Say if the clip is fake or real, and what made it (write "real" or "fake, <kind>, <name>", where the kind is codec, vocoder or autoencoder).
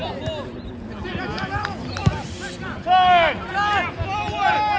real